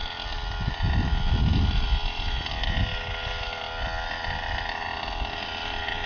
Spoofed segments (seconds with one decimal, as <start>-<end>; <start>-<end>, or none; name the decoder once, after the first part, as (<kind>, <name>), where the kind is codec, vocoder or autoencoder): none